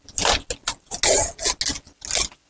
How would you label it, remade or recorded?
recorded